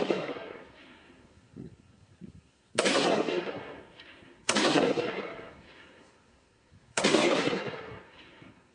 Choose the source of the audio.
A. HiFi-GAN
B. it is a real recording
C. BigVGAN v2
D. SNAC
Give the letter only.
D